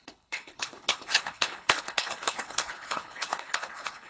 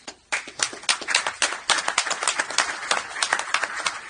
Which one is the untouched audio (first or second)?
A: second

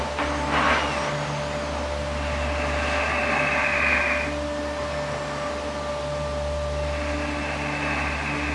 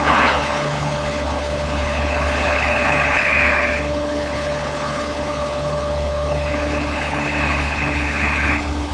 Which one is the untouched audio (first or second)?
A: first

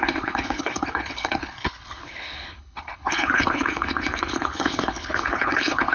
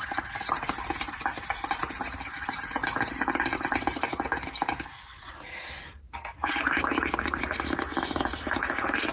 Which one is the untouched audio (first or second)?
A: second